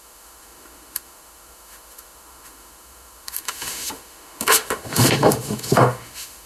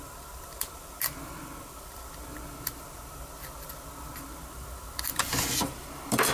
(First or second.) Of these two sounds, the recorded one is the second